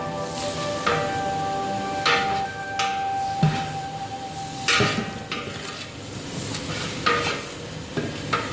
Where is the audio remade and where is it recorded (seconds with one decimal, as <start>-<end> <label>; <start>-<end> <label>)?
0.0-8.5 recorded